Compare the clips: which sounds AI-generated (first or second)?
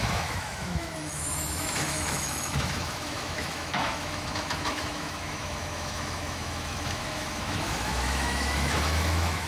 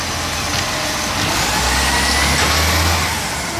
first